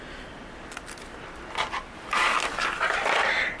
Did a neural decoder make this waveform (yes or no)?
no